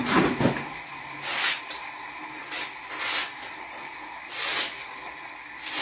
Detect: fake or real real